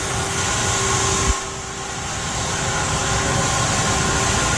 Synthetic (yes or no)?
no